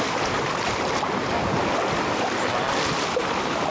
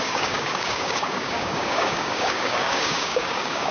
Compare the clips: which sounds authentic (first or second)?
first